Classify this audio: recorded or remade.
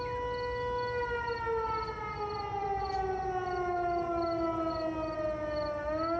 recorded